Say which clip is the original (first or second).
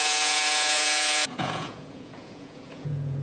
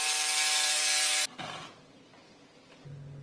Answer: second